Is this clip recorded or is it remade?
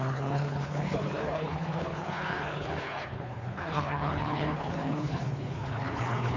remade